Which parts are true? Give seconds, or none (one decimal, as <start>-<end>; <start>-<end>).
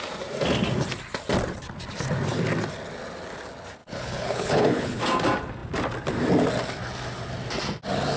0.0-3.8; 5.0-8.2